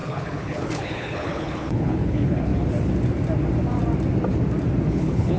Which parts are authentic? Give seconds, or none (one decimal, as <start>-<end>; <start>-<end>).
2.5-4.9